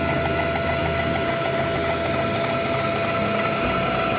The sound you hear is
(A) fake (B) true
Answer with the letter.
B